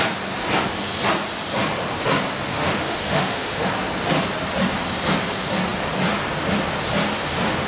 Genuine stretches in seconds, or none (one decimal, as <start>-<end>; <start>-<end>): 0.0-2.5; 3.7-7.7